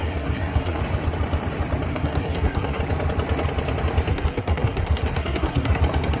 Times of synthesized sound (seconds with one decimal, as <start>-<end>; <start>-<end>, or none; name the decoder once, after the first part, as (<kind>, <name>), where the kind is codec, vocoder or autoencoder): 0.0-0.8 (codec, SNAC); 1.9-2.8; 4.1-5.8